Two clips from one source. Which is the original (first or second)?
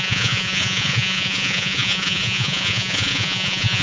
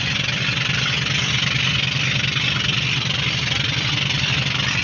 second